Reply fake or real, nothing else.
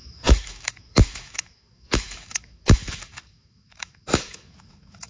fake